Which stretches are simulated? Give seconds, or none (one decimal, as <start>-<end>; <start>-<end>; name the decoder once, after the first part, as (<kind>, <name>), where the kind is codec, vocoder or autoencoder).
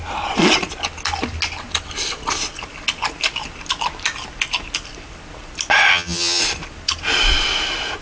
5.9-6.4 (vocoder, HiFi-GAN)